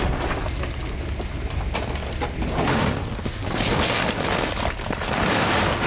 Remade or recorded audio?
recorded